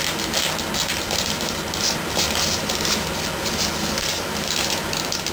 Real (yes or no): yes